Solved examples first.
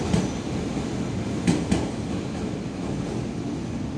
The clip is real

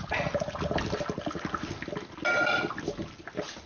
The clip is real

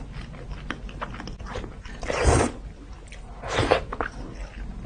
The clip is real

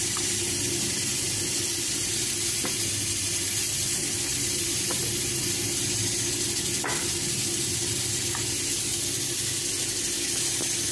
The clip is real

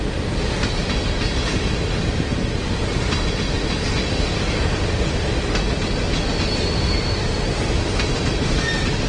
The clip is real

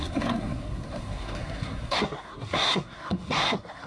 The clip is fake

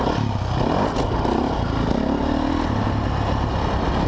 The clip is real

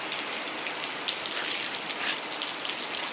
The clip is real